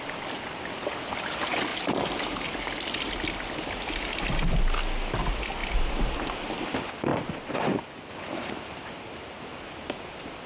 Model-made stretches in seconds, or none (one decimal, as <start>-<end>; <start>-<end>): none